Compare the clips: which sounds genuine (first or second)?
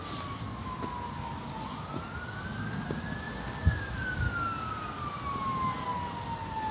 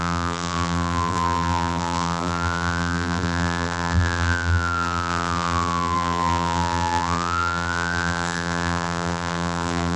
first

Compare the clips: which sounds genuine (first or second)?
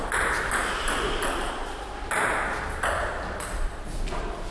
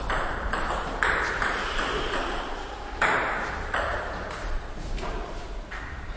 first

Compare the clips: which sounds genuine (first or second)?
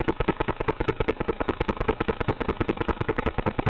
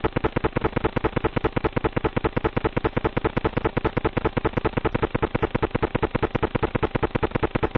second